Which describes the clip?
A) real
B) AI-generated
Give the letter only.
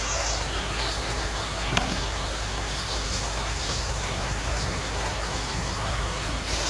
B